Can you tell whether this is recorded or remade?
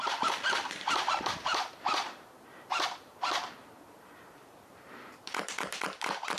remade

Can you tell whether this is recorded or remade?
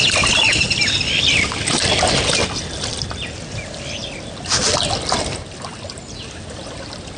recorded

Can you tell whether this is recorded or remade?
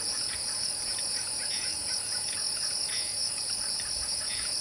remade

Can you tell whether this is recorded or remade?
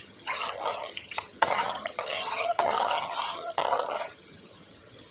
remade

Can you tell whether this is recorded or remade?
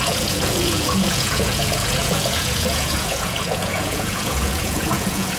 remade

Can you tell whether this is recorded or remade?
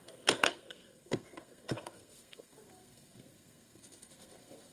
remade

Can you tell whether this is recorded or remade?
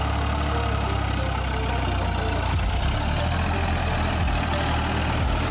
recorded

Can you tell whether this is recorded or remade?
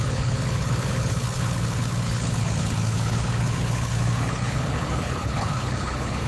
remade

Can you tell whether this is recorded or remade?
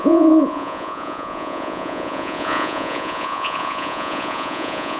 remade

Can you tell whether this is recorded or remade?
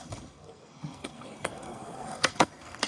remade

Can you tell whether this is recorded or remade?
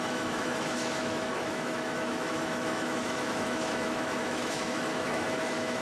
remade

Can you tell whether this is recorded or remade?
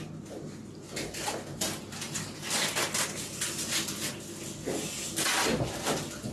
recorded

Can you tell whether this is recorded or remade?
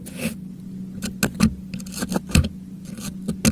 recorded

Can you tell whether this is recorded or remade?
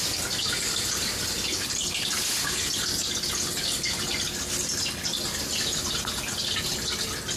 recorded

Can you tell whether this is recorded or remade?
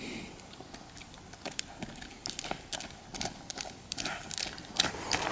recorded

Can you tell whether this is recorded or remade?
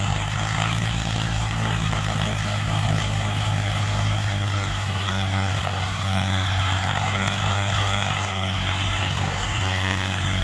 remade